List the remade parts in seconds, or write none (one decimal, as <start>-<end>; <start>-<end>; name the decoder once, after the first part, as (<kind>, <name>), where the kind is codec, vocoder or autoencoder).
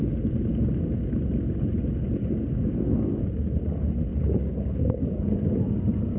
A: 2.2-3.0 (codec, DAC); 4.1-5.2